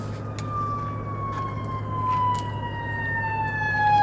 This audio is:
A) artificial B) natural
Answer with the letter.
B